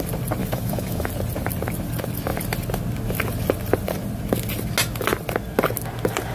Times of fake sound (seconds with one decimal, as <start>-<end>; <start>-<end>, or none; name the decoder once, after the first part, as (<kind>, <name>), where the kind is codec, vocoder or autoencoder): 0.4-1.1 (autoencoder, DAC-VAE)